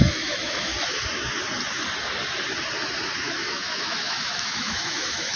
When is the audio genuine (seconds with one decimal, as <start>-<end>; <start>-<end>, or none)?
0.7-3.2